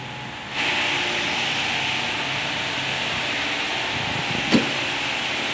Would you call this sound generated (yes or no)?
no